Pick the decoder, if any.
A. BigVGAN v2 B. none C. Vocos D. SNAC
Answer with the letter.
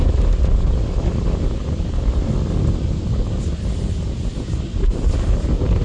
B